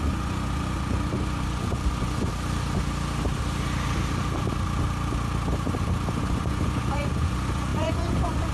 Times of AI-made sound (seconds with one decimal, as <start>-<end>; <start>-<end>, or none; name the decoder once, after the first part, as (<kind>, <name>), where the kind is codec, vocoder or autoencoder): 0.0-2.3 (vocoder, Vocos); 6.2-8.5